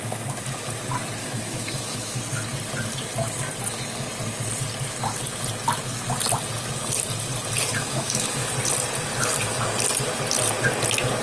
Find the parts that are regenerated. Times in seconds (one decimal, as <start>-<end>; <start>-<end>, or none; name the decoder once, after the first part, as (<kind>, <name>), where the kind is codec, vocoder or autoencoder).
1.2-2.2 (autoencoder, DAC-VAE); 7.7-8.5